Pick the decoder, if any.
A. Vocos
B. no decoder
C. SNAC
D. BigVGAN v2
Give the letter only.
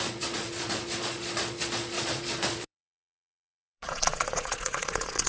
A